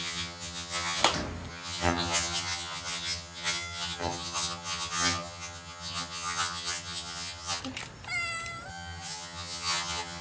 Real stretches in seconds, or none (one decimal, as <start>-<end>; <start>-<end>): 1.0-1.5; 7.6-8.7